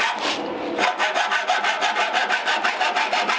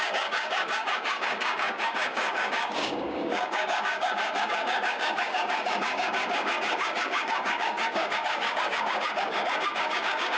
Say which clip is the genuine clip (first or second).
first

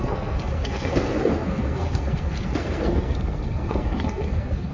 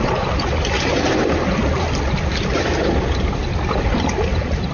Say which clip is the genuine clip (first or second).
second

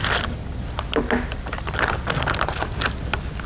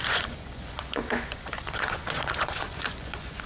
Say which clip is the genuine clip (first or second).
first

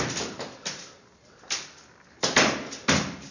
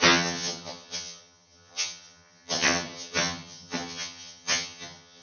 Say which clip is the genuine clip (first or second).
first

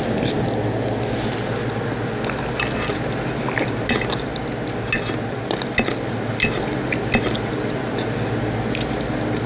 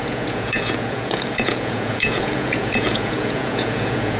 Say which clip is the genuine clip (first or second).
first